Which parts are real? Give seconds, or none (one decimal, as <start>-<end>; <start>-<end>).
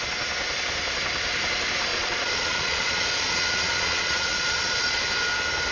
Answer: 0.0-1.9; 5.0-5.7